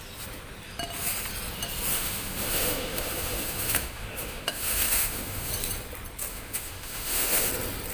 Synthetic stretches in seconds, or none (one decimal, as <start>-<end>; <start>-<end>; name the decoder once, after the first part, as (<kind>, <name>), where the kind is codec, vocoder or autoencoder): 1.9-5.5 (autoencoder, DAC-VAE); 6.3-7.5